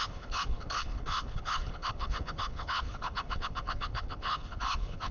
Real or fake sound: fake